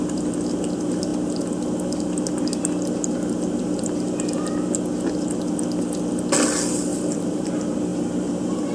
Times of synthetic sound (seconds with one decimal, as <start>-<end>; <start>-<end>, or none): 6.9-7.5; 7.9-8.7